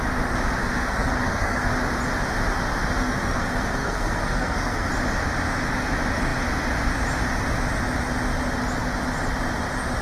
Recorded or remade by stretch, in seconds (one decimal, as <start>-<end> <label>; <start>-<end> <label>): 0.0-0.6 recorded; 0.6-1.7 remade; 1.7-3.0 recorded; 3.0-4.9 remade; 4.9-10.0 recorded